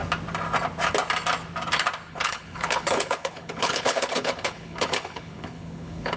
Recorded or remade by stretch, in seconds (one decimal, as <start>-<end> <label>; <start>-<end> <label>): 0.0-2.1 recorded; 2.1-6.2 remade